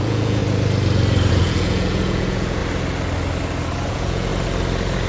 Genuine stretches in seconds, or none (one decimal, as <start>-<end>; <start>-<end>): 0.4-1.3; 2.6-3.9; 4.3-5.1